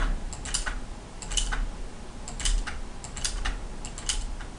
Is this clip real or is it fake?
real